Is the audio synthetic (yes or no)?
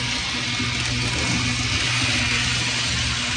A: no